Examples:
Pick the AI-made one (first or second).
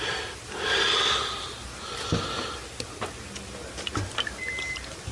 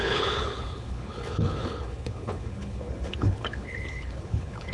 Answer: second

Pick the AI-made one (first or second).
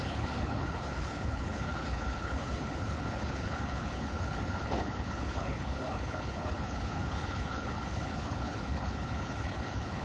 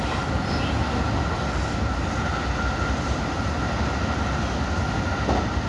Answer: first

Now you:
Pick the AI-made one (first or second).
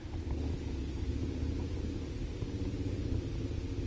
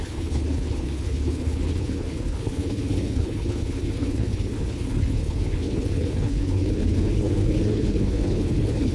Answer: second